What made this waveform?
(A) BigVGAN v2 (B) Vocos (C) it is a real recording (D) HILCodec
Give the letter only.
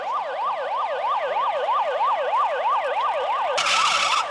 C